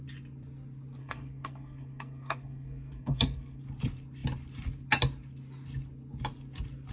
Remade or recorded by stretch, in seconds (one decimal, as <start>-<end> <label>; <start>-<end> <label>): 0.0-1.0 recorded; 1.0-3.6 remade; 3.6-6.9 recorded

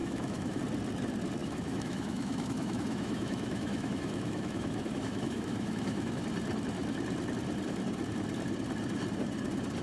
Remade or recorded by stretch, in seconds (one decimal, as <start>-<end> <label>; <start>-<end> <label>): 0.0-0.6 remade; 0.6-1.4 recorded; 1.4-6.2 remade; 6.2-9.8 recorded